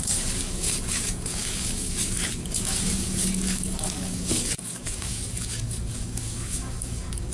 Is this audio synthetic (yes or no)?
yes